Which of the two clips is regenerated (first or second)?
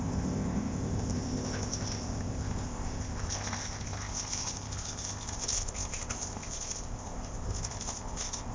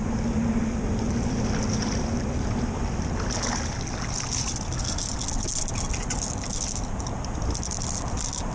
first